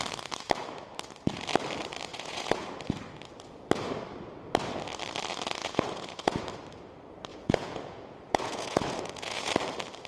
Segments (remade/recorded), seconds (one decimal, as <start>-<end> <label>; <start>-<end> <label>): 0.0-2.1 recorded; 2.1-2.7 remade; 2.7-5.6 recorded; 5.6-6.4 remade; 6.4-7.3 recorded; 7.3-9.5 remade; 9.5-10.1 recorded